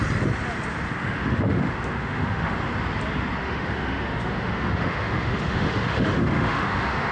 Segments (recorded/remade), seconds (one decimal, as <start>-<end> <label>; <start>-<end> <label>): 0.0-1.0 recorded; 1.0-2.6 remade; 2.6-3.4 recorded; 3.4-7.1 remade

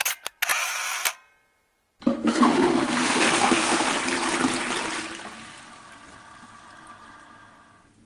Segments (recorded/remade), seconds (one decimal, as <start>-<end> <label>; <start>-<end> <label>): 0.0-2.1 recorded; 2.1-3.9 remade; 3.9-8.1 recorded

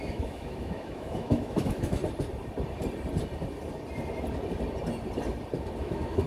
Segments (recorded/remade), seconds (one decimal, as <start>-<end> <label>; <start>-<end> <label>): 0.0-2.0 remade; 2.0-5.8 recorded; 5.8-6.3 remade

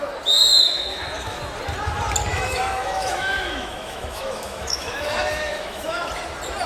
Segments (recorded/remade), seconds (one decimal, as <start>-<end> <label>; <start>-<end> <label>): 0.0-0.5 recorded; 0.5-1.4 remade; 1.4-2.3 recorded; 2.3-6.1 remade; 6.1-6.7 recorded

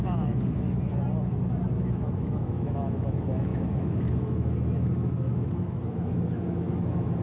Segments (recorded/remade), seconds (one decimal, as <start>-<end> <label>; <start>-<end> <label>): 0.0-0.9 remade; 0.9-1.8 recorded; 1.8-7.2 remade